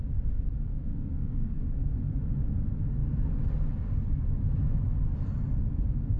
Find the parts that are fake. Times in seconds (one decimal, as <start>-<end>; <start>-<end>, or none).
0.7-2.0